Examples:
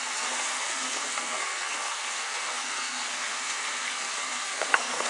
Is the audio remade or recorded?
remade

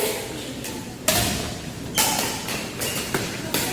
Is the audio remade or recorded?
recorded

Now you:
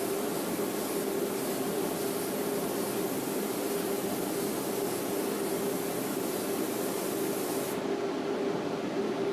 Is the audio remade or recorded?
recorded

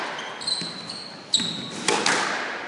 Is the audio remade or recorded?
recorded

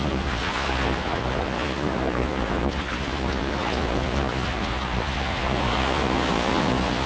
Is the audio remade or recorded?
remade